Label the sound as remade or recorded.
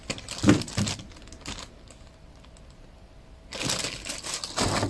recorded